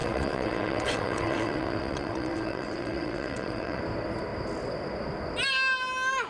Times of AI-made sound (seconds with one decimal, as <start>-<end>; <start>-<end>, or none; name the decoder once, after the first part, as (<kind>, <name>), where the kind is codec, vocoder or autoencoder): 0.0-3.8 (vocoder, WaveNeXt)